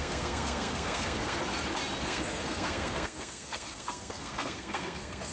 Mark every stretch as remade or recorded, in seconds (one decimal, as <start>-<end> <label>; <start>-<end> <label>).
0.0-1.4 remade; 1.4-2.0 recorded; 2.0-5.3 remade